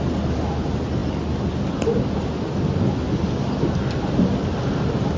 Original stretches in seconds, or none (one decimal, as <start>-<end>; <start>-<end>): 0.0-5.2